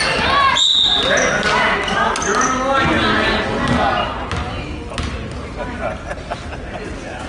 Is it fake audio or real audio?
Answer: real